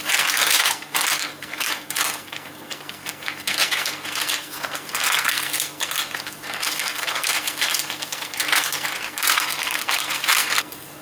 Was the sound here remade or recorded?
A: remade